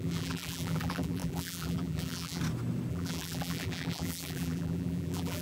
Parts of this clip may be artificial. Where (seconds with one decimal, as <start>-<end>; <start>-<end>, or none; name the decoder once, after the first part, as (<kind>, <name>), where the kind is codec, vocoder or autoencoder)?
0.0-2.4 (vocoder, BigVGAN v2); 2.9-5.4